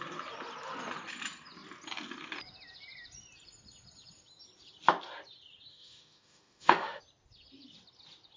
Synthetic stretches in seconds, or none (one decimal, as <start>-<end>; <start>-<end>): 5.7-7.0